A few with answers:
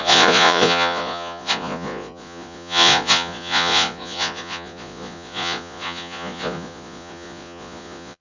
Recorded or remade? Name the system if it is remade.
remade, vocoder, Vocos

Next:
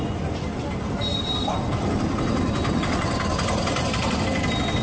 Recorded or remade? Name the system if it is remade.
recorded